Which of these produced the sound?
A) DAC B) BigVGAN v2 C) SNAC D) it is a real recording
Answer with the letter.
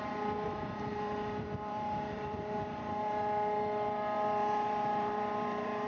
B